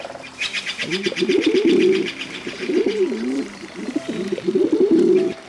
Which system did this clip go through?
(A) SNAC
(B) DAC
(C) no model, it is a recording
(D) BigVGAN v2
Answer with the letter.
D